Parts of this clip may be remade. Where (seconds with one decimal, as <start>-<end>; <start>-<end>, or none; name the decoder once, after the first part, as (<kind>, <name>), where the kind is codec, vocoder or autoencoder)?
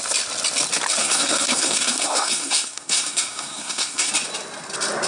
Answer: 1.0-4.1 (codec, SNAC)